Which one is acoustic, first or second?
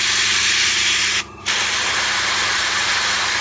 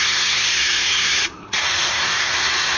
first